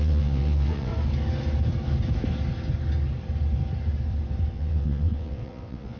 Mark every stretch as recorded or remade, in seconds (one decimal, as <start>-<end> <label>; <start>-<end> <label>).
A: 0.0-0.9 remade; 0.9-4.5 recorded; 4.5-6.0 remade